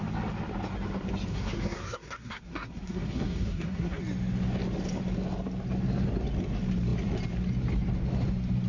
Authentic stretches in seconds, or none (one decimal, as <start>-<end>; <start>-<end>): 0.0-1.3; 4.0-8.7